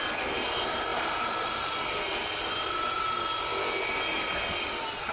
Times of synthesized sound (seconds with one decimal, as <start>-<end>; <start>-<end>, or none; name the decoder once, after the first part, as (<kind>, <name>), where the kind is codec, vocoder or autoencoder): none